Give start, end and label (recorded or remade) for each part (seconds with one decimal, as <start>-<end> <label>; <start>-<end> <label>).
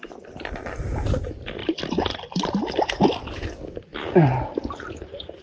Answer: 0.0-5.4 recorded